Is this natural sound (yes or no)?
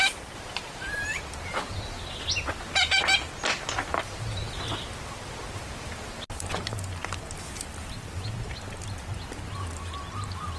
yes